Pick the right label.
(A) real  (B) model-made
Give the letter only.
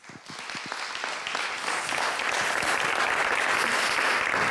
A